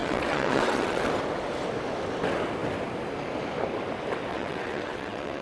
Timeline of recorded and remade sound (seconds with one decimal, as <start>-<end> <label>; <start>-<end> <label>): 0.0-1.1 remade; 1.1-4.3 recorded; 4.3-5.4 remade